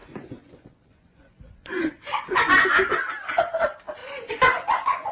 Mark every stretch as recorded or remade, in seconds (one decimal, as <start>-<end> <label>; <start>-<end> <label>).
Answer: 0.0-3.1 remade; 3.1-4.0 recorded; 4.0-5.1 remade